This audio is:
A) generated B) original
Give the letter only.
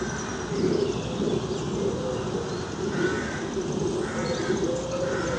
B